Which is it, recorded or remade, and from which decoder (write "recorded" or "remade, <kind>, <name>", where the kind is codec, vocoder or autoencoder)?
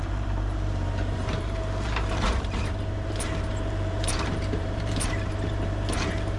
remade, vocoder, BigVGAN v2